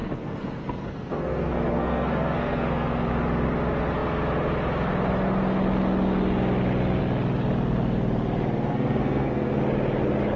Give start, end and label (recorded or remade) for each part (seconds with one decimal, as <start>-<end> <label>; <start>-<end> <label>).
0.0-3.1 remade; 3.1-8.7 recorded; 8.7-9.5 remade; 9.5-10.4 recorded